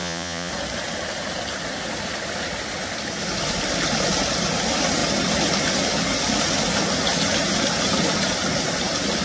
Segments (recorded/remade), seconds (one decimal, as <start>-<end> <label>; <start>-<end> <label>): 0.0-0.5 remade; 0.5-9.2 recorded